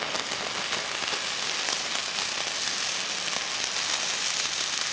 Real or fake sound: real